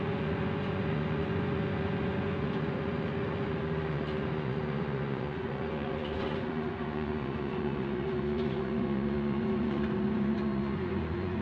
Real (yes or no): no